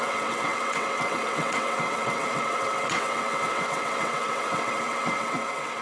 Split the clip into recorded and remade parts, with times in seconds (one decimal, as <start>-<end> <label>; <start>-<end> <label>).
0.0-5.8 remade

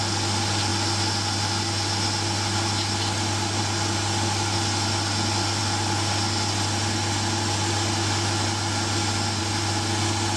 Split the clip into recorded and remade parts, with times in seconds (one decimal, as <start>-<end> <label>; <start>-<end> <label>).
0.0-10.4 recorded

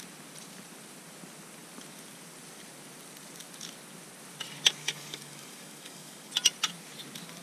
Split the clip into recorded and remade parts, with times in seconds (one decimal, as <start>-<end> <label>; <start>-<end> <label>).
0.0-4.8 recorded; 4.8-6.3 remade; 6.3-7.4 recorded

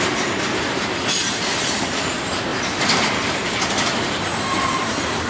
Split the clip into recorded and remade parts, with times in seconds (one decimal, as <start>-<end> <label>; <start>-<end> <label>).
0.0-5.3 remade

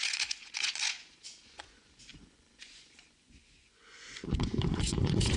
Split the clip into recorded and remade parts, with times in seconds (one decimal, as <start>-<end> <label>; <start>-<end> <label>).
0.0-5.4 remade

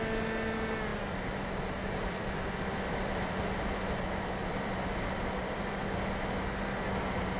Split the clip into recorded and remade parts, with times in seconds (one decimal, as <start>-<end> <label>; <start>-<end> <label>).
0.0-0.9 recorded; 0.9-5.3 remade; 5.3-7.4 recorded

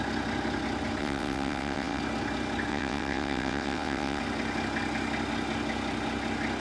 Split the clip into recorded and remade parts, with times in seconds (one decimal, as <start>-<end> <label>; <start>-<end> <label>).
0.0-1.0 recorded; 1.0-2.0 remade; 2.0-2.7 recorded; 2.7-4.2 remade; 4.2-6.6 recorded

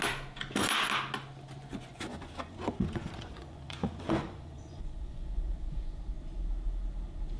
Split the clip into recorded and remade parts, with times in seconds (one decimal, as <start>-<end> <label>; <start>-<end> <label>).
0.0-1.6 recorded; 1.6-6.0 remade; 6.0-7.4 recorded